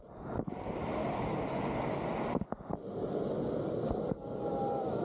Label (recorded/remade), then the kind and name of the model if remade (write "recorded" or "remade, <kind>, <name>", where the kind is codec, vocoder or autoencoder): recorded